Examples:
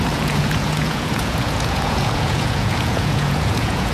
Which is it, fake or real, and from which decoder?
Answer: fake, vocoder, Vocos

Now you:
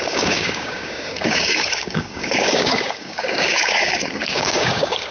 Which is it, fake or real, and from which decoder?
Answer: fake, codec, DAC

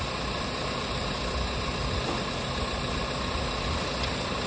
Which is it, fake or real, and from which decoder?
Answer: real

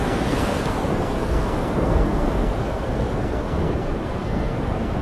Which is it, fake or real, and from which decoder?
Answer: fake, codec, SNAC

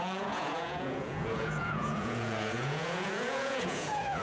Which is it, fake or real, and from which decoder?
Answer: fake, vocoder, Vocos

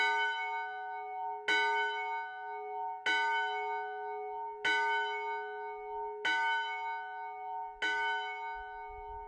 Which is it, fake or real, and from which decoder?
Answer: real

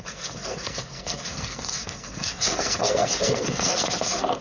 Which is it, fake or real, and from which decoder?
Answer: fake, codec, SNAC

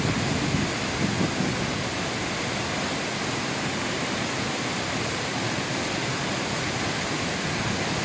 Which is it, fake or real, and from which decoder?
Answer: real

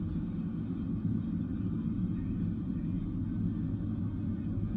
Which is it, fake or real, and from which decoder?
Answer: real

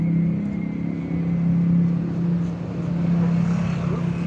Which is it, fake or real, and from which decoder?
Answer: real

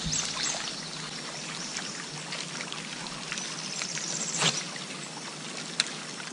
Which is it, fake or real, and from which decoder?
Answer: real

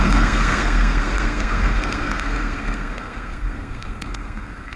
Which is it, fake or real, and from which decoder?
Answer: fake, codec, SNAC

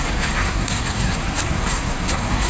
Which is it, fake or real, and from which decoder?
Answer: fake, codec, SNAC